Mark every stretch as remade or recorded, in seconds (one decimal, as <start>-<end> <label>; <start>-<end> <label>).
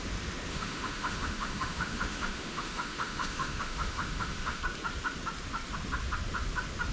0.0-0.5 recorded; 0.5-4.6 remade; 4.6-6.9 recorded